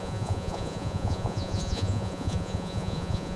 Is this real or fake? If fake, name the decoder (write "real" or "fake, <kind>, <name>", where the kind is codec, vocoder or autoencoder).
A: fake, vocoder, Vocos